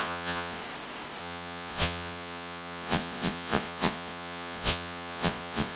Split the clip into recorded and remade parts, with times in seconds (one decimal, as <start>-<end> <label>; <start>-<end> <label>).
0.0-0.6 remade; 0.6-1.2 recorded; 1.2-5.8 remade